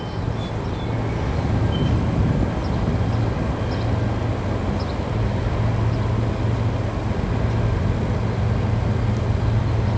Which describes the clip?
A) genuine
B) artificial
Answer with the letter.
A